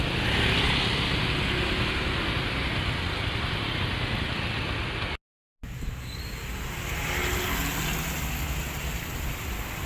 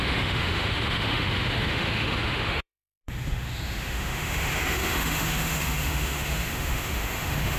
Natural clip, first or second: first